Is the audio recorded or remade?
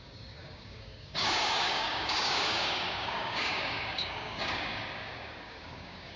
remade